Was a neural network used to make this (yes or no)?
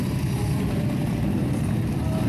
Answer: no